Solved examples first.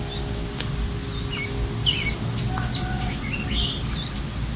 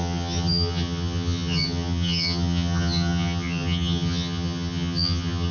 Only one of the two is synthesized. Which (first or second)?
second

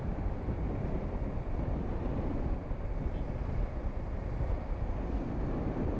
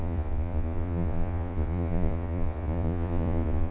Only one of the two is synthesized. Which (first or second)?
second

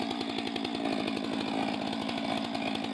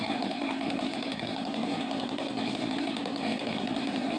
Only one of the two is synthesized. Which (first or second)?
second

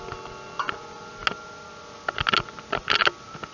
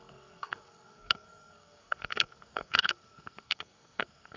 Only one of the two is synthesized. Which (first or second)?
second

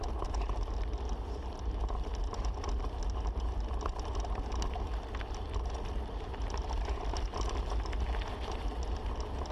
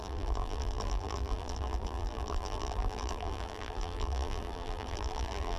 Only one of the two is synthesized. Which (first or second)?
second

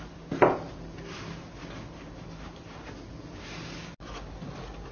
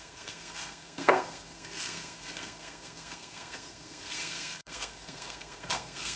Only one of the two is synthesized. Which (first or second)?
second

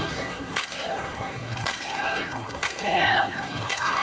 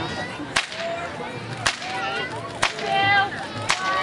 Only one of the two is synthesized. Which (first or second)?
first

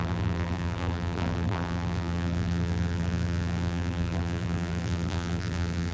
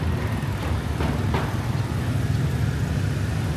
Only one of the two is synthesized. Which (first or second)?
first